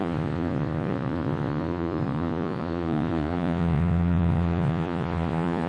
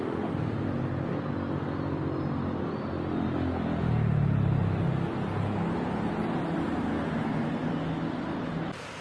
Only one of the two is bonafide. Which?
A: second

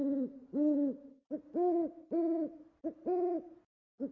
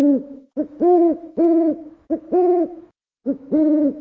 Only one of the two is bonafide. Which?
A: first